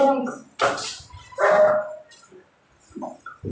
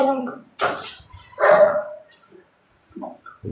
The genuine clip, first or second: first